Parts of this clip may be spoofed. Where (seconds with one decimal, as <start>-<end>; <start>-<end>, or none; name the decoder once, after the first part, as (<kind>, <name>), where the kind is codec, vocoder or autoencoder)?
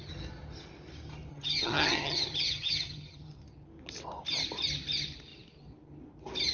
1.3-3.3 (vocoder, HiFi-GAN)